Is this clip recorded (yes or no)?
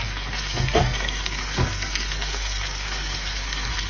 no